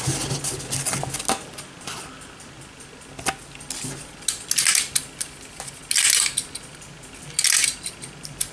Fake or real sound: real